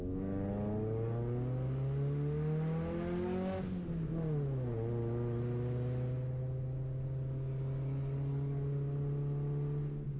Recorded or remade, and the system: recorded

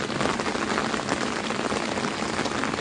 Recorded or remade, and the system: recorded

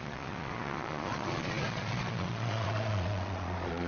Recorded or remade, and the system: remade, vocoder, Vocos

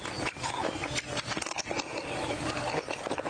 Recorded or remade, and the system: recorded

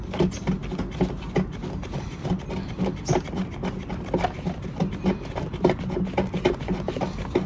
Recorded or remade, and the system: recorded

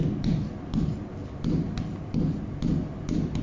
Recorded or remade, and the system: recorded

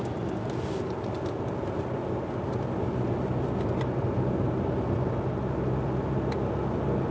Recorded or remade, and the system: recorded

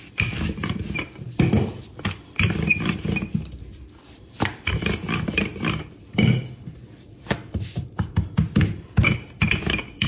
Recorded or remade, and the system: remade, vocoder, BigVGAN v2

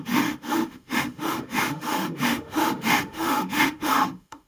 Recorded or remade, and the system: remade, autoencoder, DAC-VAE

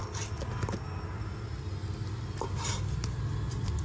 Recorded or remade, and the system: recorded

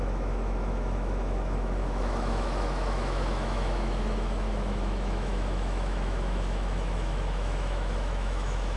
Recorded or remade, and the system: remade, autoencoder, DAC-VAE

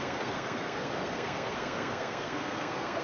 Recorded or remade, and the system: remade, codec, SNAC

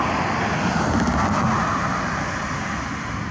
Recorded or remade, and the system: recorded